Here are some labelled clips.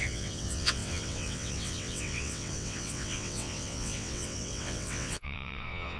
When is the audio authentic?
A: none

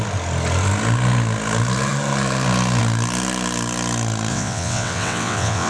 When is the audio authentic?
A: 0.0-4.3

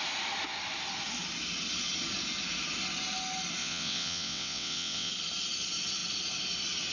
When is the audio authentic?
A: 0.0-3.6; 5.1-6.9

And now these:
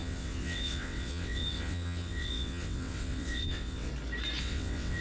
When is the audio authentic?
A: 3.9-4.4